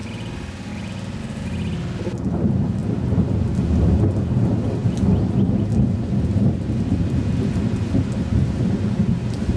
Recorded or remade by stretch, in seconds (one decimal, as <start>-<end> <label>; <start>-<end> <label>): 0.0-9.6 recorded